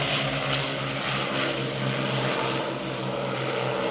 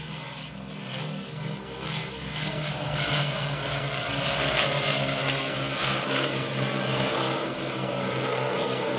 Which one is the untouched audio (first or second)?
first